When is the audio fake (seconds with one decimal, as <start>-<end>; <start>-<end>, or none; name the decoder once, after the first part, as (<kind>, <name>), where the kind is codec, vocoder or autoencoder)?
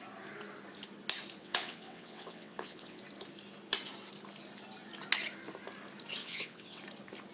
1.4-3.0 (vocoder, WaveNeXt); 6.2-6.8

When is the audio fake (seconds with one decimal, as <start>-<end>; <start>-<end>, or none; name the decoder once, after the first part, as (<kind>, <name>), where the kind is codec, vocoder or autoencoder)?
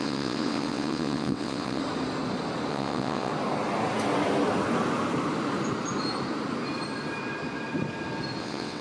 0.0-1.8 (vocoder, WaveNeXt); 2.7-3.3; 8.4-8.8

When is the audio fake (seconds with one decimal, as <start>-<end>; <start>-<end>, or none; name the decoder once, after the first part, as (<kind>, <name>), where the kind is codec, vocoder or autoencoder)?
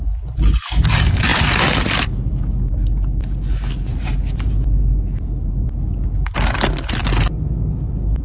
none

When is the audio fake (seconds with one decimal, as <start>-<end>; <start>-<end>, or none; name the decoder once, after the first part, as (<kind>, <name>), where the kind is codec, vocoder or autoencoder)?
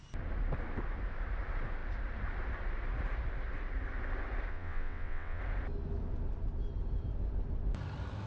4.5-5.4 (vocoder, WaveNeXt)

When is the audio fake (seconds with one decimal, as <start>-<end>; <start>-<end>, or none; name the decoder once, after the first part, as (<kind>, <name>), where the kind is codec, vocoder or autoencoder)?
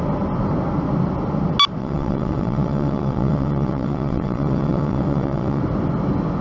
1.8-5.6 (vocoder, WaveNeXt)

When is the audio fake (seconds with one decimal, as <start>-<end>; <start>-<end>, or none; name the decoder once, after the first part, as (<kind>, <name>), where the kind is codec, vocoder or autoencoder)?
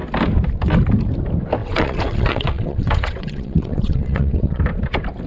1.6-4.6 (vocoder, WaveNeXt)